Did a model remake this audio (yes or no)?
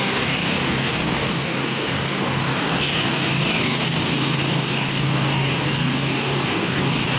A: yes